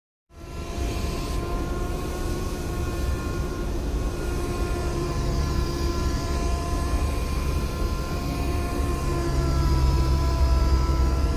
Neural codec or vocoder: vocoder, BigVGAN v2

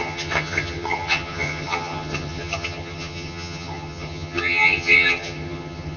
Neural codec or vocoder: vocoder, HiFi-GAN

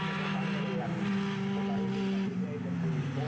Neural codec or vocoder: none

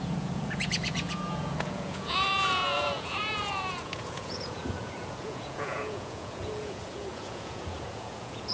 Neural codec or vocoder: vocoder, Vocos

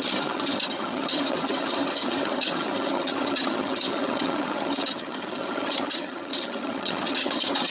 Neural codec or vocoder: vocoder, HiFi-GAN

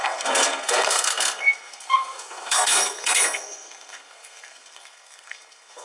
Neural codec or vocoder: codec, SNAC